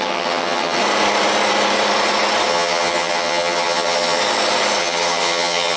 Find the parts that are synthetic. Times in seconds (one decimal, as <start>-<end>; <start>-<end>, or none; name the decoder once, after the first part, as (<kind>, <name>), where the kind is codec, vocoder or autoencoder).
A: 0.0-0.8 (vocoder, HiFi-GAN); 2.5-4.2; 4.8-5.8